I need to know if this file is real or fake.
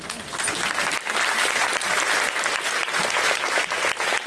real